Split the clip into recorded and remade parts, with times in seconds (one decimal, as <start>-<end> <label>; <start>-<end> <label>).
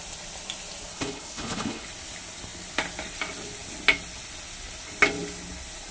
0.0-0.9 recorded; 0.9-1.9 remade; 1.9-5.9 recorded